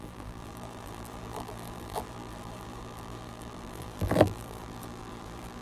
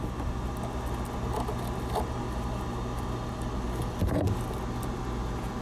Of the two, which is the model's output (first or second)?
first